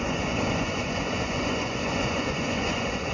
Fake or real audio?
fake